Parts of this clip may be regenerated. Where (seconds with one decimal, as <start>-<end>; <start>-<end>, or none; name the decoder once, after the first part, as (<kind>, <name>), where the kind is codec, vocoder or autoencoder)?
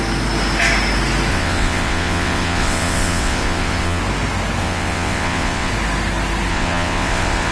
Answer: 1.3-4.0 (vocoder, WaveNeXt); 4.6-5.7; 6.5-7.5